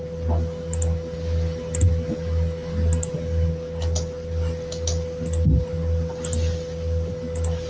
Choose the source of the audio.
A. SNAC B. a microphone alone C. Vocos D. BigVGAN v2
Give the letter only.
B